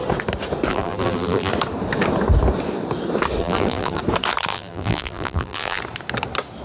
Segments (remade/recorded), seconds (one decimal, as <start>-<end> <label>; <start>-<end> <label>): 0.0-0.7 recorded; 0.7-1.5 remade; 1.5-3.4 recorded; 3.4-4.0 remade; 4.0-4.5 recorded; 4.5-5.8 remade; 5.8-6.6 recorded